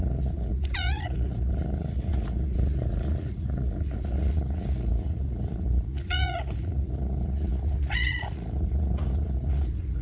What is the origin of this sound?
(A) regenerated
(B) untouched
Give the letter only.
A